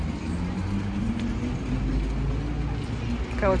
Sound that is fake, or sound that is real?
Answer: real